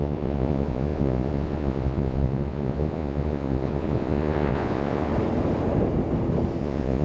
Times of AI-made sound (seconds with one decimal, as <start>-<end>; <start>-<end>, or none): 0.0-5.1; 6.6-7.0